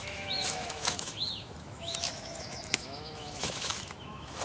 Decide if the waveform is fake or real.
fake